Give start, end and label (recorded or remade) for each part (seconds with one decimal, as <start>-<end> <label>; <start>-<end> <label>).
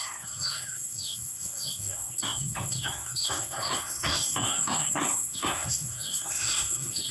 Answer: 0.0-7.1 remade